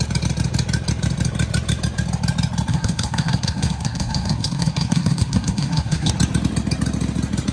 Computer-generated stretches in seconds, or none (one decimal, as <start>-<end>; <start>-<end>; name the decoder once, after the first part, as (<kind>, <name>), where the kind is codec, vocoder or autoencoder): 2.7-6.1 (codec, SNAC)